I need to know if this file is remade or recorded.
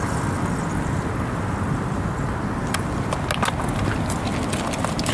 recorded